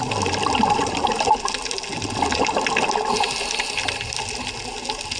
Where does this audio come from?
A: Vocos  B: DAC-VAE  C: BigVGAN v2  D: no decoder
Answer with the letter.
D